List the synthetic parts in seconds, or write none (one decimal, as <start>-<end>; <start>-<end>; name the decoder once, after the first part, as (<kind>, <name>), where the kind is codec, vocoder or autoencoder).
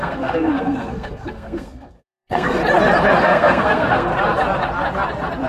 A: 0.0-2.6 (codec, SNAC); 3.2-4.1